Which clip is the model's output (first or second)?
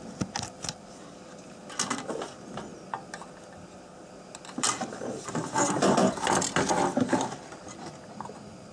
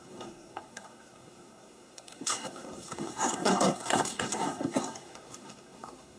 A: second